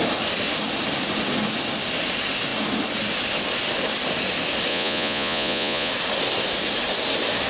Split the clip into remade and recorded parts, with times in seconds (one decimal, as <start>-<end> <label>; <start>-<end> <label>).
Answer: 0.0-4.7 recorded; 4.7-5.9 remade; 5.9-7.5 recorded